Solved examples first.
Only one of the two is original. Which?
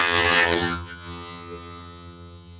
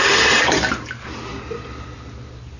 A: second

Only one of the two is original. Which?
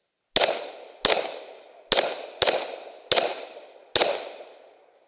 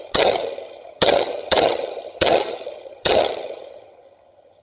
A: first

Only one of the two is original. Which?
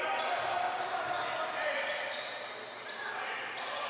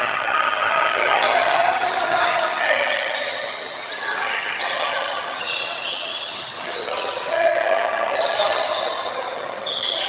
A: first